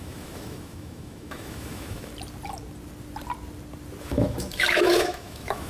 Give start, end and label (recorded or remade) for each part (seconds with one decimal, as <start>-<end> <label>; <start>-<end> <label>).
0.0-2.1 remade; 2.1-4.0 recorded; 4.0-5.7 remade

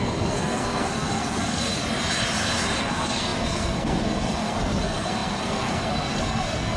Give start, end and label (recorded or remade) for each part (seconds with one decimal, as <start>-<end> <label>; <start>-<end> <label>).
0.0-1.8 remade; 1.8-2.8 recorded; 2.8-6.8 remade

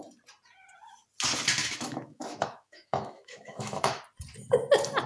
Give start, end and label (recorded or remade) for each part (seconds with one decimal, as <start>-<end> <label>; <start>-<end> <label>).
0.0-1.6 recorded; 1.6-4.0 remade; 4.0-5.1 recorded

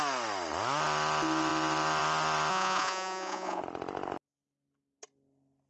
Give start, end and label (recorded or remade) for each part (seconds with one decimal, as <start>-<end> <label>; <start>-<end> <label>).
0.0-2.5 recorded; 2.5-3.6 remade; 3.6-5.7 recorded

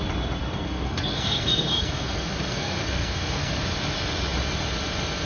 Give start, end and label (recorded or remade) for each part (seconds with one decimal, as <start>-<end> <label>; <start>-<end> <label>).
0.0-0.4 recorded; 0.4-3.6 remade; 3.6-5.3 recorded

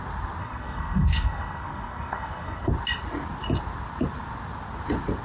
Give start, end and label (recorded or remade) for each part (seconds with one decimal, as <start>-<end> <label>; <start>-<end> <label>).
0.0-0.4 recorded; 0.4-2.7 remade; 2.7-5.2 recorded

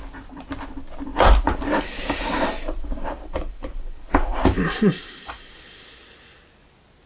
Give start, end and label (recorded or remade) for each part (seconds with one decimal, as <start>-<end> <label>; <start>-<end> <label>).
0.0-1.1 recorded; 1.1-5.4 remade; 5.4-7.1 recorded

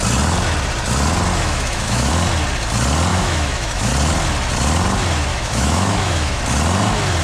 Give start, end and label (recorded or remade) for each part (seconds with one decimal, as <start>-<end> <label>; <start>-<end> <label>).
0.0-1.3 recorded; 1.3-2.1 remade; 2.1-3.1 recorded; 3.1-3.9 remade; 3.9-5.3 recorded; 5.3-6.4 remade; 6.4-7.2 recorded